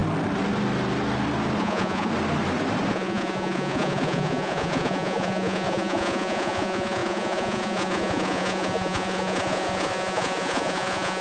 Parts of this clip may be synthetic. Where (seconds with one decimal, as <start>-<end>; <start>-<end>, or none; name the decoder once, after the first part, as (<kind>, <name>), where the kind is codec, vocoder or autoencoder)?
1.6-2.1 (vocoder, Vocos); 2.9-11.2